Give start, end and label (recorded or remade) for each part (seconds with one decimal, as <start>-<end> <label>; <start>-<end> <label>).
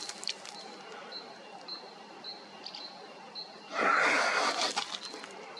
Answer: 0.0-5.6 recorded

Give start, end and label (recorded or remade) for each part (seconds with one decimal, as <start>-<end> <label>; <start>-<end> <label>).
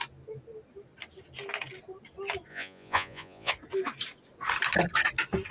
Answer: 0.0-2.5 recorded; 2.5-3.5 remade; 3.5-5.5 recorded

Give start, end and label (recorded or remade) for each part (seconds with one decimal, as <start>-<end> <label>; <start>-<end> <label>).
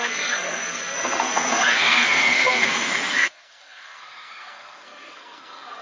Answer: 0.0-5.8 remade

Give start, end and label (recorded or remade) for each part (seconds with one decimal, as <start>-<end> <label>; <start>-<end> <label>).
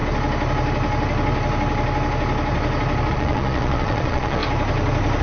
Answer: 0.0-3.1 recorded; 3.1-4.4 remade; 4.4-5.2 recorded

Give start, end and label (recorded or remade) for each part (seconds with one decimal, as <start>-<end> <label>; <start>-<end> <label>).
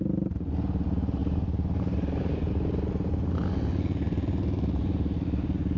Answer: 0.0-3.4 remade; 3.4-4.8 recorded; 4.8-5.8 remade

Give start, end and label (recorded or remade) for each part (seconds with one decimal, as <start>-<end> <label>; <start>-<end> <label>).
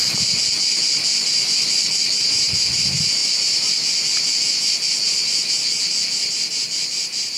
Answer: 0.0-7.4 recorded